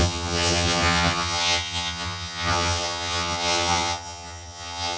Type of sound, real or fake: fake